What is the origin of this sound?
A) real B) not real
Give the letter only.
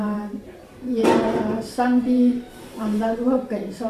B